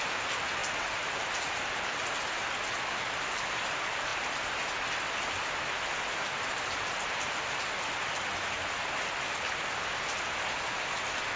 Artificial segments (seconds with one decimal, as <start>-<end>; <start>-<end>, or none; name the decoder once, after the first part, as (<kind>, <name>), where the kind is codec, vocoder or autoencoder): none